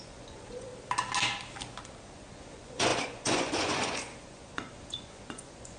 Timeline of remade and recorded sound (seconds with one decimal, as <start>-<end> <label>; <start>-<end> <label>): 0.0-0.7 remade; 0.7-2.0 recorded; 2.0-5.8 remade